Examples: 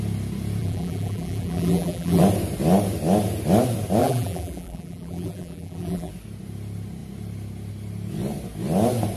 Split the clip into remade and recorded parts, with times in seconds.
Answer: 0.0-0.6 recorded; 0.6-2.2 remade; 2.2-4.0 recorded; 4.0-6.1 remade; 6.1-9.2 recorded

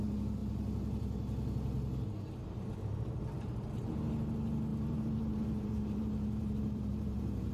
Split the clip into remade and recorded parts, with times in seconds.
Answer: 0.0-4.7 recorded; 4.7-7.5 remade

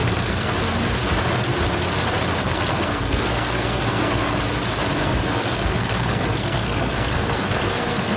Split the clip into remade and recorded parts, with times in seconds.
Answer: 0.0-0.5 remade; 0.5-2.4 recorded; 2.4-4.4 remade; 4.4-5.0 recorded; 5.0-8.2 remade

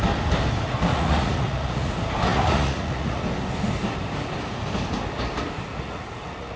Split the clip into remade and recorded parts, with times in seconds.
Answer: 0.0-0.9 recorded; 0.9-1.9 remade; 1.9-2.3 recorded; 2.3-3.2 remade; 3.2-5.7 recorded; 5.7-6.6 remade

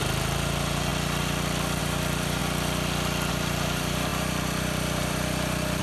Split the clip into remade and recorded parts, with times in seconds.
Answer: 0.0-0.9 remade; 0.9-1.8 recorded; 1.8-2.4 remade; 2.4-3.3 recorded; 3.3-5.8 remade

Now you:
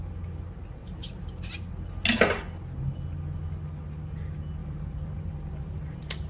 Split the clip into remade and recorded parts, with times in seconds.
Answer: 0.0-0.8 recorded; 0.8-1.5 remade; 1.5-4.6 recorded; 4.6-6.3 remade

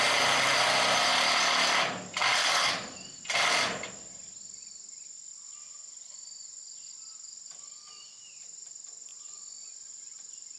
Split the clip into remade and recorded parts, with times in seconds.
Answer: 0.0-10.6 recorded

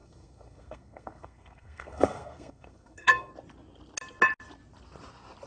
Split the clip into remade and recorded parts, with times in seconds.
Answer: 0.0-3.3 remade; 3.3-5.5 recorded